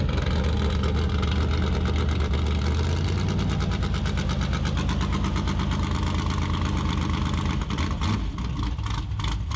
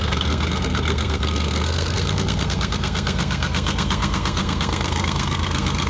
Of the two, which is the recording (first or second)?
first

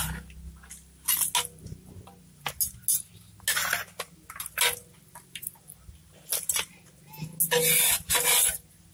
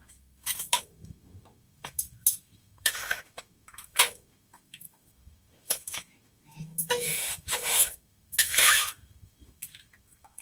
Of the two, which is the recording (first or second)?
first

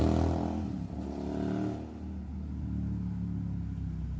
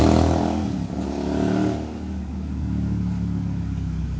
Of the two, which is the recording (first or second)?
first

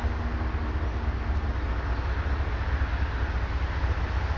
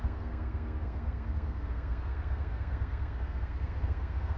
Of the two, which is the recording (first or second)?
first